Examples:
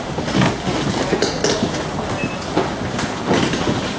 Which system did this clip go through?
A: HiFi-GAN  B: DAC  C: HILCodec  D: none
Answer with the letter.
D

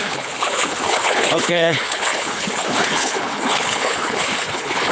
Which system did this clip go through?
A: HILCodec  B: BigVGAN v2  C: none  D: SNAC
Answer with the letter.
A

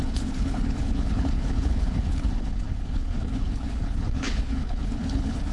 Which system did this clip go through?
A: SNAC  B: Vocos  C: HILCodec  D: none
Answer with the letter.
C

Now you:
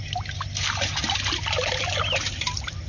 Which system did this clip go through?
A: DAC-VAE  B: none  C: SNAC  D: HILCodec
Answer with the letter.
B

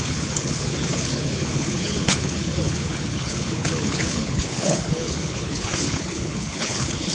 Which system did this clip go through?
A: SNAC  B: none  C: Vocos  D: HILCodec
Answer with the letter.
D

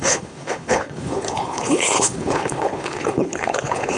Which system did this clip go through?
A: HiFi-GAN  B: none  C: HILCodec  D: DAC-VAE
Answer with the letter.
C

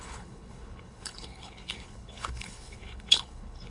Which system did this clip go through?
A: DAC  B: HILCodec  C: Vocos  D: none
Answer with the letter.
B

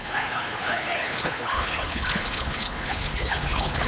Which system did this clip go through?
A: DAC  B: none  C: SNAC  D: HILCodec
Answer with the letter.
D